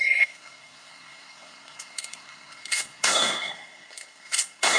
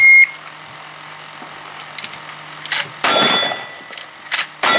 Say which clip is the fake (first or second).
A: first